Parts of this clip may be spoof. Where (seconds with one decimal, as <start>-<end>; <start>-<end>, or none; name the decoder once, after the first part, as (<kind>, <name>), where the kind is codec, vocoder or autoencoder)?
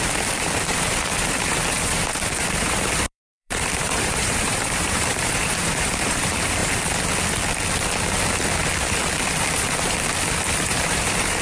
0.0-6.6 (vocoder, BigVGAN v2); 10.5-11.4